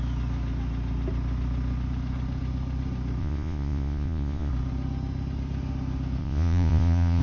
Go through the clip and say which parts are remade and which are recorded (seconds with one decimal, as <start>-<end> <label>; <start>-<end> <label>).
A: 0.0-3.2 recorded; 3.2-4.5 remade; 4.5-6.2 recorded; 6.2-7.2 remade